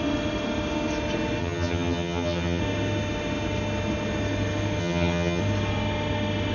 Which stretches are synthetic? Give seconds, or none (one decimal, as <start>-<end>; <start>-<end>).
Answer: 1.4-2.6; 4.8-5.4